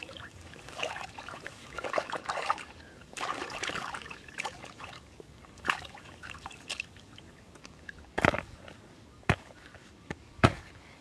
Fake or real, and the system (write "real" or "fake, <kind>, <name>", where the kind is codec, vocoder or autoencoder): fake, codec, DAC